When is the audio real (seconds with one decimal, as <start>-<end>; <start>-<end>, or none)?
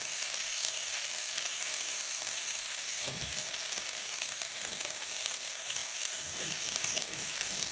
none